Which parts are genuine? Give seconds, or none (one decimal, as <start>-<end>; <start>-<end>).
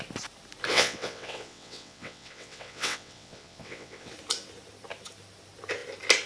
0.0-0.7; 4.1-6.3